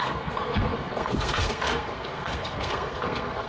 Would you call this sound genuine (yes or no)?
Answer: no